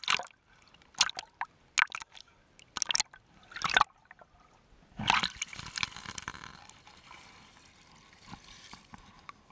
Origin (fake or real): real